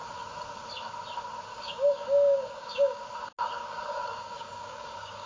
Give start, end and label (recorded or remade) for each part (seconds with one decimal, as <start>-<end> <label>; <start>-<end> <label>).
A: 0.0-1.5 recorded; 1.5-3.0 remade; 3.0-3.6 recorded; 3.6-5.3 remade